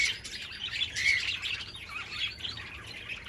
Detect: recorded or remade recorded